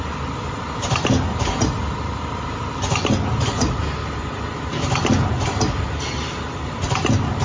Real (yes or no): yes